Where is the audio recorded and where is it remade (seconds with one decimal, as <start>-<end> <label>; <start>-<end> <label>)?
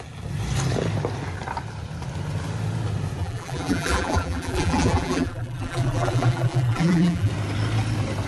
0.0-3.2 recorded; 3.2-7.3 remade; 7.3-8.3 recorded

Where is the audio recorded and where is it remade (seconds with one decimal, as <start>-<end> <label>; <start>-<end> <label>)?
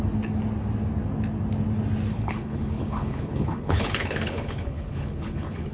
0.0-2.1 recorded; 2.1-5.7 remade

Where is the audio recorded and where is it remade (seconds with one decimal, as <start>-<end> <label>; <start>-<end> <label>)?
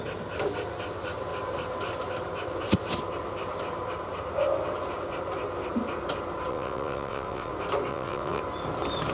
0.0-6.5 recorded; 6.5-7.5 remade; 7.5-7.9 recorded; 7.9-8.4 remade; 8.4-9.1 recorded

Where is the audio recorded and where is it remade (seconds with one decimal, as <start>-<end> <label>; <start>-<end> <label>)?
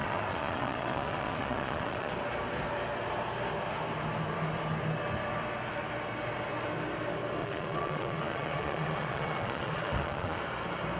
0.0-2.1 remade; 2.1-7.4 recorded; 7.4-10.4 remade; 10.4-11.0 recorded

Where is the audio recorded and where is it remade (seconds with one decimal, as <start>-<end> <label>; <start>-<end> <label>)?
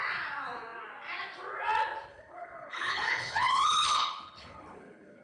0.0-2.1 recorded; 2.1-5.2 remade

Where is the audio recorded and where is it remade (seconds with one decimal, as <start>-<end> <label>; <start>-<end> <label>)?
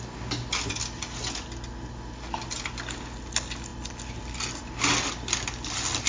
0.0-6.1 recorded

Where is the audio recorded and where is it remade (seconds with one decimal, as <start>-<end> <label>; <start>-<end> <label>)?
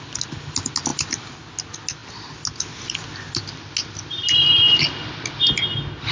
0.0-0.9 recorded; 0.9-1.5 remade; 1.5-6.1 recorded